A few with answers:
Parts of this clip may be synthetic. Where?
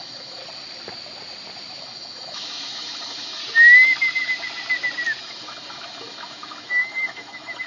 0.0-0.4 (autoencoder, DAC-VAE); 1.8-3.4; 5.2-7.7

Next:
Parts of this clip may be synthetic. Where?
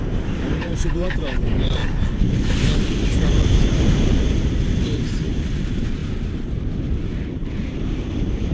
0.0-1.8 (vocoder, BigVGAN v2); 3.6-8.5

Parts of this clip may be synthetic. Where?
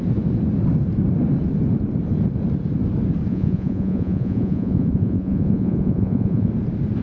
3.3-6.5 (vocoder, Vocos)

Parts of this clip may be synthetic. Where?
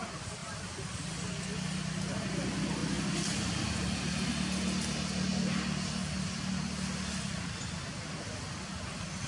0.4-1.9 (vocoder, BigVGAN v2); 2.8-7.6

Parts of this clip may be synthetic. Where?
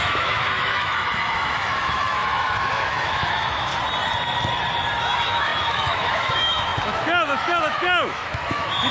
0.0-3.7 (autoencoder, DAC-VAE); 5.0-8.9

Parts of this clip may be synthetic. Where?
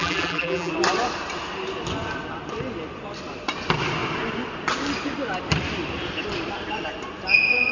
0.0-0.7 (vocoder, BigVGAN v2)